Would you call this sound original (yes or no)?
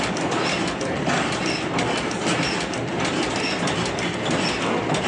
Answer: yes